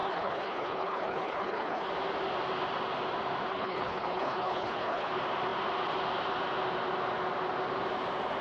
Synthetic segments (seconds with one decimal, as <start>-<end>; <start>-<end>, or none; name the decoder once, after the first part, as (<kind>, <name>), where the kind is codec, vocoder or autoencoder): 0.0-1.9 (codec, HILCodec); 3.5-5.1

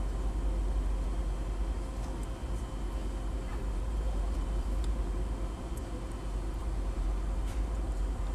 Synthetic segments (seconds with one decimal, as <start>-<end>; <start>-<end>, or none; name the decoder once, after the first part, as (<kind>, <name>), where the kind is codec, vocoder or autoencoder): 3.5-5.7 (vocoder, BigVGAN v2); 6.6-8.3

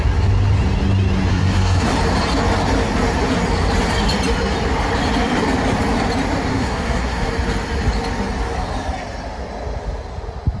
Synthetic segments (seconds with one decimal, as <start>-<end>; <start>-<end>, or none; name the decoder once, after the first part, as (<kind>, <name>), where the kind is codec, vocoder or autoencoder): 1.3-1.9 (codec, SNAC); 6.5-7.3

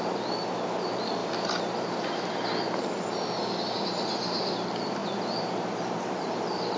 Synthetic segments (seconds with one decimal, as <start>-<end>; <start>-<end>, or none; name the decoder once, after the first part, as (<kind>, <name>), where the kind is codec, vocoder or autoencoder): none

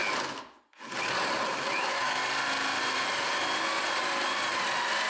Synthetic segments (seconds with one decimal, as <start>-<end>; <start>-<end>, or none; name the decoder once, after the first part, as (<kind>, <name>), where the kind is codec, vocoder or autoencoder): 1.8-2.2 (autoencoder, DAC-VAE)

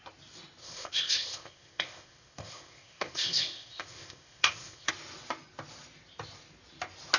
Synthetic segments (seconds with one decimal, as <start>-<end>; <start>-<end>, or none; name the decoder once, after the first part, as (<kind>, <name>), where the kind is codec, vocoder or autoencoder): 0.6-4.9 (codec, ZipCodec)

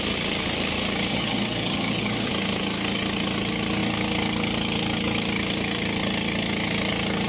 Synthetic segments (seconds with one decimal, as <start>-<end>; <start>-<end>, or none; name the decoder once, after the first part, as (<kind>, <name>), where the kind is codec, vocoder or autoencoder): 1.1-2.3 (vocoder, HiFi-GAN)